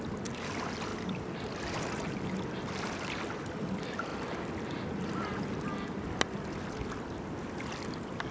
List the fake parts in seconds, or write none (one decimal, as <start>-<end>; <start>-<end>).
none